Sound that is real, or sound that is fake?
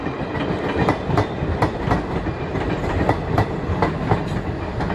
real